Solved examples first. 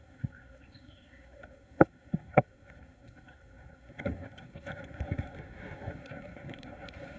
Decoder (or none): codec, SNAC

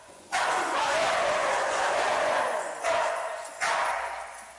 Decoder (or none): vocoder, Vocos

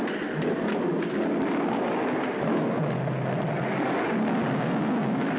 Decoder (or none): none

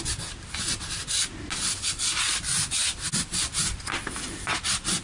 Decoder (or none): none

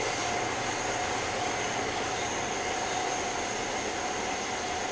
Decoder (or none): none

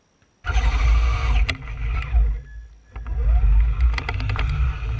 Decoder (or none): none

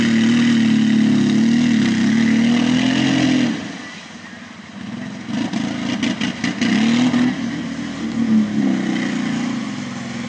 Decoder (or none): none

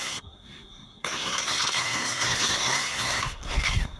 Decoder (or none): codec, SNAC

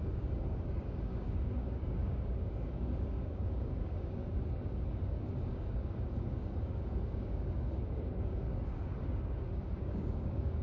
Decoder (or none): codec, DAC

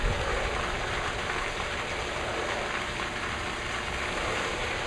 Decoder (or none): none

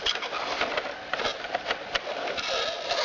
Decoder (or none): none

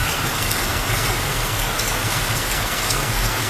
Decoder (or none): codec, SNAC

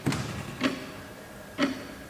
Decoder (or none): none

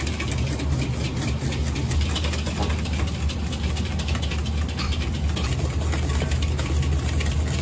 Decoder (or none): none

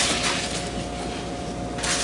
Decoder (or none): none